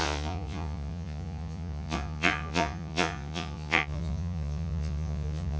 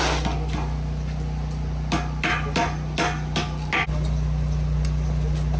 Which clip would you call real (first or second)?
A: second